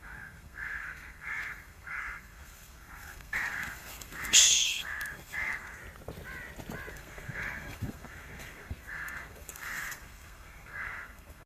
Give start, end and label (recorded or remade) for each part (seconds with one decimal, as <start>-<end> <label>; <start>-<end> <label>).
0.0-5.8 remade; 5.8-6.9 recorded; 6.9-11.5 remade